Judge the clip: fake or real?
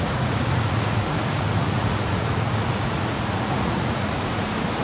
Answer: fake